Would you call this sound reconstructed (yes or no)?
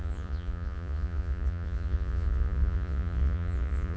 yes